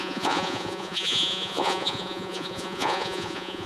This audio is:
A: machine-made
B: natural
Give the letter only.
A